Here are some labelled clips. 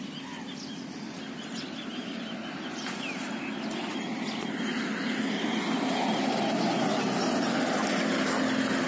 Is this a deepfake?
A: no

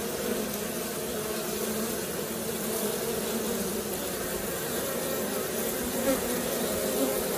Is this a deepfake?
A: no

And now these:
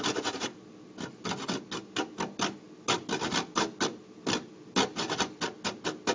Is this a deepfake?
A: no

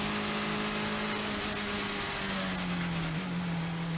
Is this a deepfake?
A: no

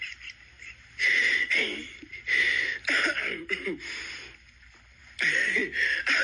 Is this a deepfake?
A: no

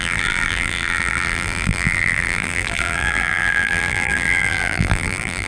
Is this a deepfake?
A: yes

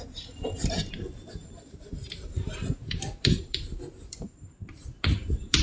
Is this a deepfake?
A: yes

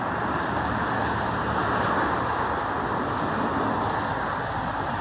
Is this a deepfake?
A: no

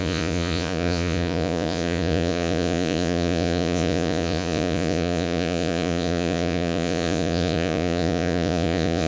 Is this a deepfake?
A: yes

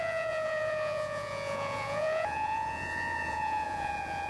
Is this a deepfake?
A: yes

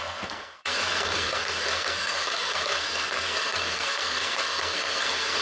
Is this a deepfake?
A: yes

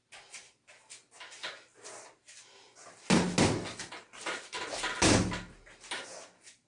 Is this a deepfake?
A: no